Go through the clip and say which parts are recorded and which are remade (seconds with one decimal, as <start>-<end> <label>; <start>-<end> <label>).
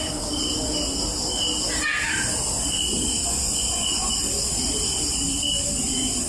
0.0-3.2 recorded; 3.2-4.1 remade; 4.1-6.3 recorded